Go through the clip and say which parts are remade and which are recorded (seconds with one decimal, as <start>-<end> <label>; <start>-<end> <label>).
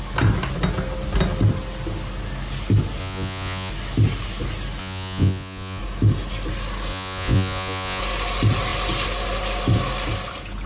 0.0-3.0 recorded; 3.0-3.7 remade; 3.7-4.8 recorded; 4.8-5.8 remade; 5.8-6.9 recorded; 6.9-8.0 remade; 8.0-10.7 recorded